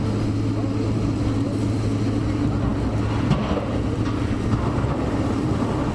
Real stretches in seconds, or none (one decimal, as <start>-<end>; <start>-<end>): 0.0-5.9